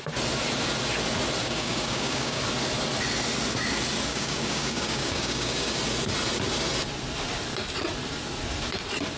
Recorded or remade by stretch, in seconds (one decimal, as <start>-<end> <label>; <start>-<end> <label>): 0.0-1.4 recorded; 1.4-2.4 remade; 2.4-4.1 recorded; 4.1-5.8 remade; 5.8-9.2 recorded